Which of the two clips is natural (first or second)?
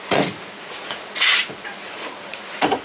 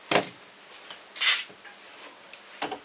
second